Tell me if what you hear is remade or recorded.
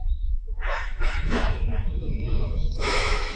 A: remade